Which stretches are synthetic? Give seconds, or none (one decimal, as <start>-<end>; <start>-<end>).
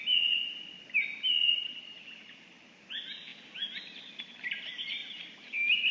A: none